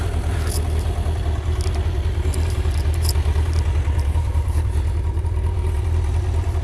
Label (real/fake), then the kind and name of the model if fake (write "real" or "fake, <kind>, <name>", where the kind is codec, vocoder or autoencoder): real